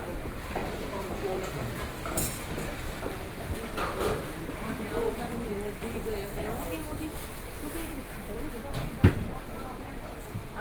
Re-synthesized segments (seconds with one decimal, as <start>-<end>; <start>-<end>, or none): 0.0-5.5; 8.2-10.6